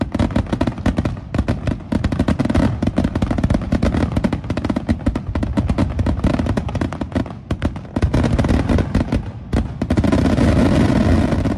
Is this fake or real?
real